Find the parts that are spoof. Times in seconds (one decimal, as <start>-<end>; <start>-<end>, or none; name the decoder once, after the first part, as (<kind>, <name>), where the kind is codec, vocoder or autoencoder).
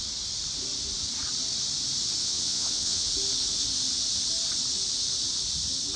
2.2-3.1 (vocoder, WaveNeXt)